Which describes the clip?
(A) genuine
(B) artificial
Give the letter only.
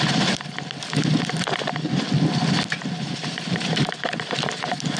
A